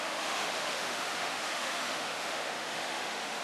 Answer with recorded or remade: remade